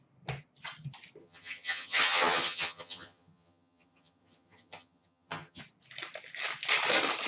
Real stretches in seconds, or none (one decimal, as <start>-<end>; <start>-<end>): 0.0-1.2; 5.6-7.3